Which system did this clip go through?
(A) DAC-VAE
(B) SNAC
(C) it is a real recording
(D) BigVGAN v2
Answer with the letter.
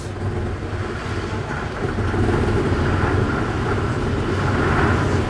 C